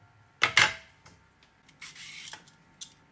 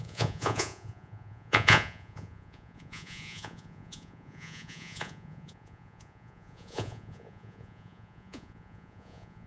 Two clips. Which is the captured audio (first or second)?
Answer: first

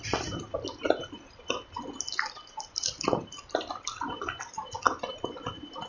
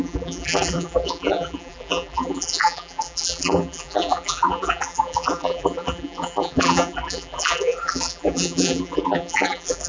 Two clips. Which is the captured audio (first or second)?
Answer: first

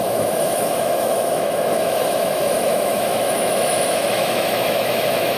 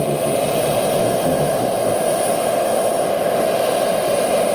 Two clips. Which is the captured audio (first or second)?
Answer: second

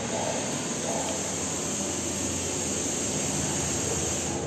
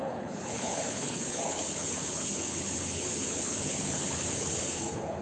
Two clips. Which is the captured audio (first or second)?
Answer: first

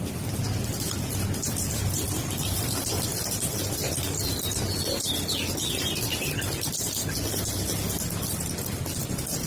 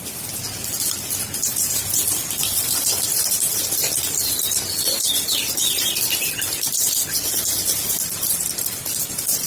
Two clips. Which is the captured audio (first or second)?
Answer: first